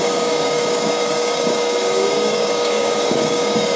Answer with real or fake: fake